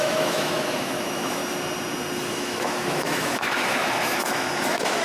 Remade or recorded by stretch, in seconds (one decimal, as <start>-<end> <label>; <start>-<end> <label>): 0.0-1.4 remade; 1.4-2.3 recorded; 2.3-5.0 remade